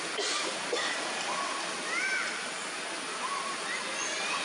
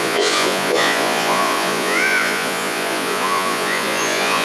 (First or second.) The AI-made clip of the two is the second